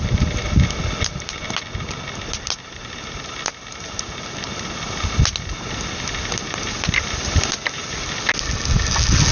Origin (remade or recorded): recorded